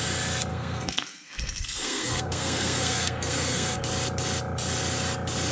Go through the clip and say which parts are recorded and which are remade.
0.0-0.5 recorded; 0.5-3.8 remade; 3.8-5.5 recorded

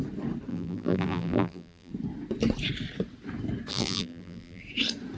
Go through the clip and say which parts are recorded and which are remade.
0.0-0.5 recorded; 0.5-1.9 remade; 1.9-3.7 recorded; 3.7-4.6 remade; 4.6-5.2 recorded

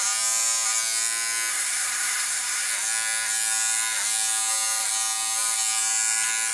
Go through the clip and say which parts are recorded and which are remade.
0.0-1.5 recorded; 1.5-2.7 remade; 2.7-6.5 recorded

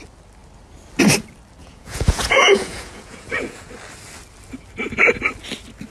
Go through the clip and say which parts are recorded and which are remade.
0.0-1.6 recorded; 1.6-3.7 remade; 3.7-5.9 recorded

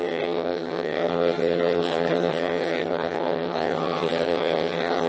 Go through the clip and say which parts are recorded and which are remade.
0.0-5.1 remade